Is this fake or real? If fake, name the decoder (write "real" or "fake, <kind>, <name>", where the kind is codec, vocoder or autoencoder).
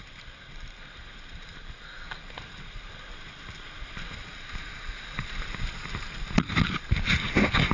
real